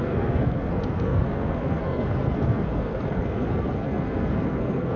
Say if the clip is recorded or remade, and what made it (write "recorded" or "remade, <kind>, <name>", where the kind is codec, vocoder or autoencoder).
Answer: remade, codec, SNAC